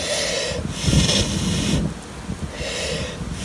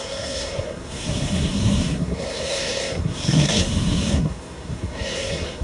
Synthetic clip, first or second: second